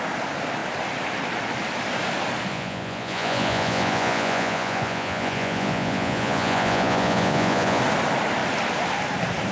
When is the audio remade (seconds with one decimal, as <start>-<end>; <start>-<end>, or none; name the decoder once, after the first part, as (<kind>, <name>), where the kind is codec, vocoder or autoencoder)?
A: 2.5-7.8 (vocoder, Vocos)